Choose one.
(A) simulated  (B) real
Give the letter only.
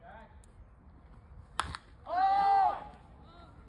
B